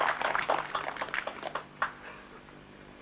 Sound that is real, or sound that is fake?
real